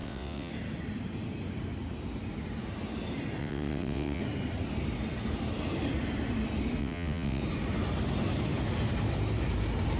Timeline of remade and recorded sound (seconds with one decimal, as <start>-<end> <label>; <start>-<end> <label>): 0.0-0.5 remade; 0.5-3.4 recorded; 3.4-4.2 remade; 4.2-6.8 recorded; 6.8-7.4 remade; 7.4-10.0 recorded